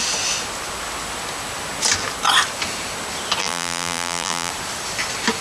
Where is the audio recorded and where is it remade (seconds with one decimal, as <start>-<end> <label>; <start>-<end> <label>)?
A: 0.0-3.4 recorded; 3.4-4.5 remade; 4.5-5.4 recorded

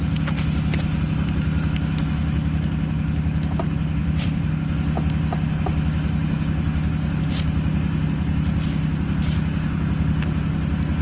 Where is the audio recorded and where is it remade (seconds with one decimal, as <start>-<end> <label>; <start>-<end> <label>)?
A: 0.0-4.0 recorded; 4.0-4.5 remade; 4.5-11.0 recorded